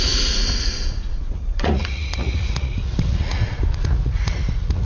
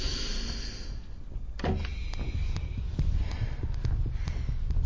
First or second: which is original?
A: second